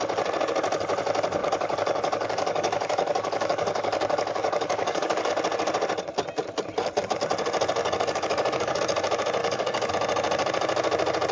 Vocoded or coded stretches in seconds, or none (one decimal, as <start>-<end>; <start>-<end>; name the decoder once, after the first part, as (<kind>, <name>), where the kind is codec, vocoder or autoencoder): 1.4-5.3 (codec, DAC); 7.8-8.8; 9.4-9.9